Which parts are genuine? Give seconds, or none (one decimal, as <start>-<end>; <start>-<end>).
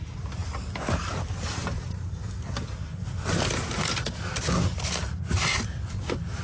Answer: 0.0-6.4